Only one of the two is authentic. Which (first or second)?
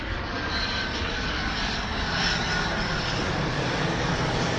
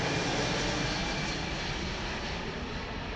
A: second